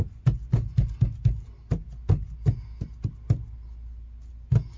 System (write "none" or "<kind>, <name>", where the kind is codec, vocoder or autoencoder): none